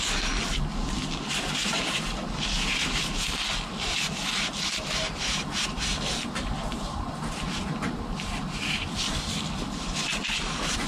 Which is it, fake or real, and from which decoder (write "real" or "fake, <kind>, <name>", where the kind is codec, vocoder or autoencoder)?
real